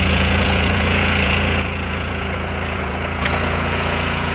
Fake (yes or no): yes